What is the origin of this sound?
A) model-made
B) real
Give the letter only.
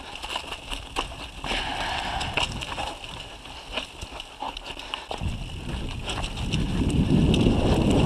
B